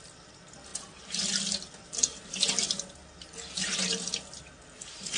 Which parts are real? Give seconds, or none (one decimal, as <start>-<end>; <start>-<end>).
0.0-5.2